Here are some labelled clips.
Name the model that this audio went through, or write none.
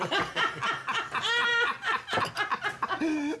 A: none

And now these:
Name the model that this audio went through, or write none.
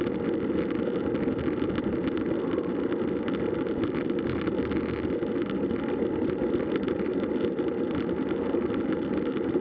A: none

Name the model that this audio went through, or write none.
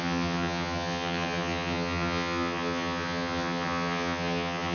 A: vocoder, HiFi-GAN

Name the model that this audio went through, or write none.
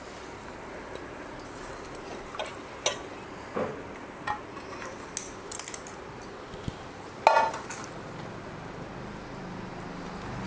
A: none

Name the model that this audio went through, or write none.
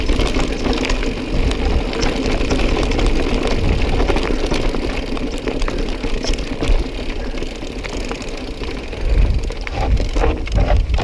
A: none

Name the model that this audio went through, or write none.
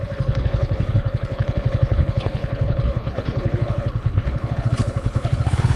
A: codec, HILCodec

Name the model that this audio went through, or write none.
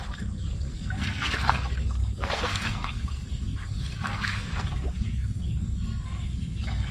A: codec, SNAC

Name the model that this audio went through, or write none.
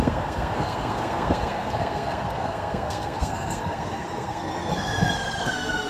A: codec, SNAC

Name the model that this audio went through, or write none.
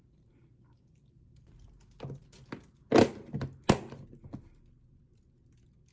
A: none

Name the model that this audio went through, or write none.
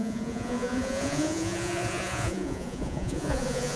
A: vocoder, Vocos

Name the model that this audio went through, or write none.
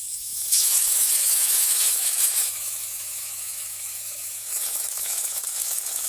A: autoencoder, DAC-VAE